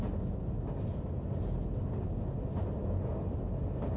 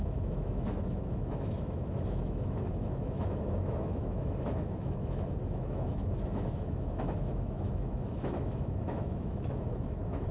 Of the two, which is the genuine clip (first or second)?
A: first